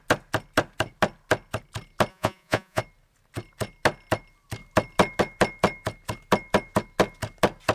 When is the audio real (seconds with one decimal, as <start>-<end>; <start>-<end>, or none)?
0.0-2.1; 2.8-7.7